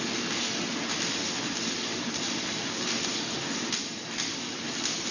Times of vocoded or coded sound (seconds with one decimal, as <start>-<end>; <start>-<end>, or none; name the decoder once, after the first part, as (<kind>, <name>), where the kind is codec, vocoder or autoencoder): 1.9-5.1 (vocoder, BigVGAN v2)